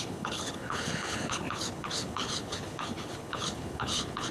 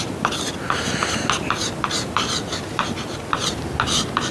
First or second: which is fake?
first